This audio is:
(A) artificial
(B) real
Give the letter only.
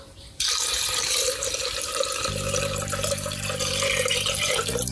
A